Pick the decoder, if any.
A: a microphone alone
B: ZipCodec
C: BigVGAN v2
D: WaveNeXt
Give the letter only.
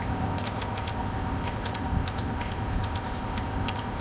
B